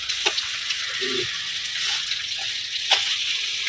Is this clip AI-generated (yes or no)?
yes